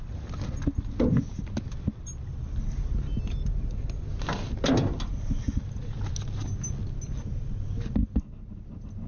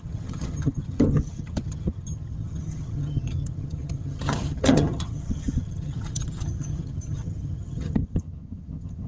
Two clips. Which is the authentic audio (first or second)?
first